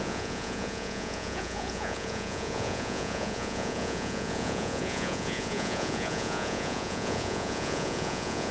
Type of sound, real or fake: fake